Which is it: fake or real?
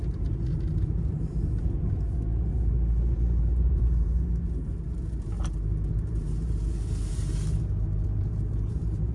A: fake